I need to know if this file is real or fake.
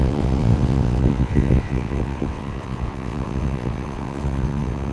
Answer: fake